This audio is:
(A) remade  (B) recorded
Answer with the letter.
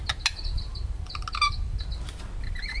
B